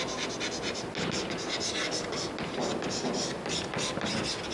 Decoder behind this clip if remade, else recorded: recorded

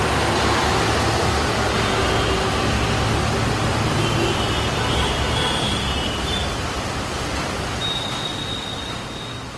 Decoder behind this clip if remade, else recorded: recorded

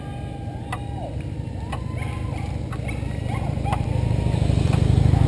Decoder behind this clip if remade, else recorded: recorded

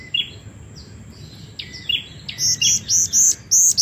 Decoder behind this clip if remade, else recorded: recorded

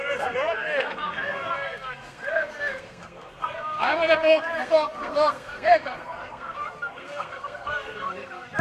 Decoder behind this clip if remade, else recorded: remade, codec, SNAC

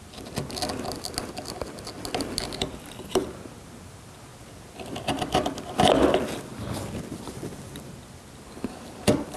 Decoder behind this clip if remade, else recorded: recorded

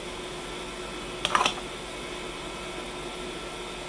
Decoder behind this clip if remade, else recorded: recorded